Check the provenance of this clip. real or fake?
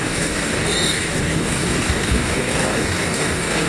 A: fake